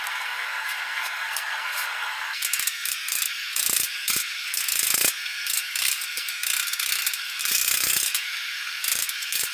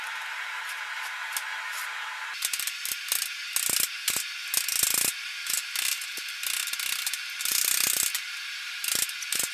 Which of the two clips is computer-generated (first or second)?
first